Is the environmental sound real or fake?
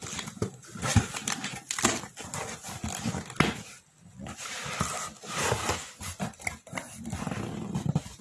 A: real